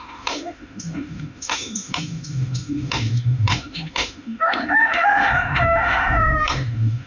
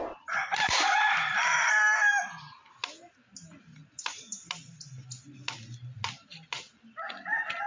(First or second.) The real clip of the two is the second